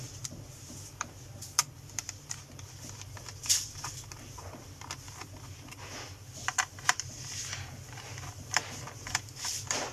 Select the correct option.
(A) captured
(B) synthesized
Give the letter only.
B